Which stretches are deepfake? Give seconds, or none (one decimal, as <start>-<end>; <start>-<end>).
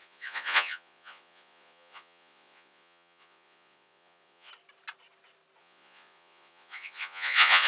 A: 0.0-4.5; 5.6-7.7